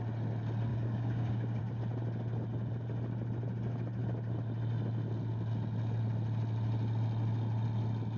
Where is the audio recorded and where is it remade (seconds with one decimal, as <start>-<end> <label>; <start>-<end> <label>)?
0.0-0.7 recorded; 0.7-1.6 remade; 1.6-8.2 recorded